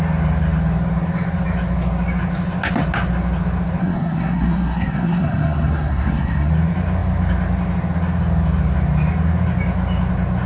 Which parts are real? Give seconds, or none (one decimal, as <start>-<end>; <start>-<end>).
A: 0.0-3.8; 6.5-10.5